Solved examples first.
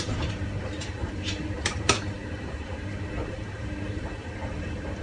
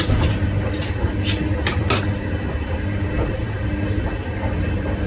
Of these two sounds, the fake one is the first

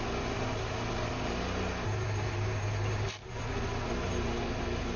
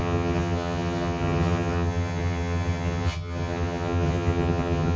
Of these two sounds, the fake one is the second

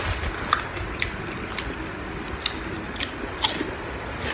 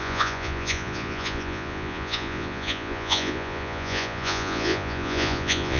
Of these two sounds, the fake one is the second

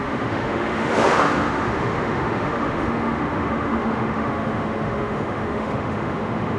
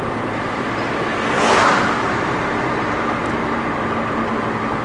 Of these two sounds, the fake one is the first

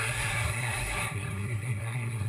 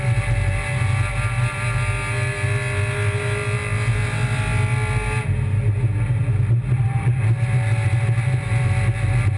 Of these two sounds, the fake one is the first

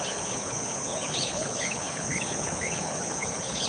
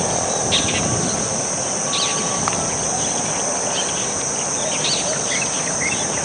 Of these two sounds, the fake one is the first